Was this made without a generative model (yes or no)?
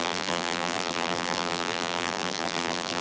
no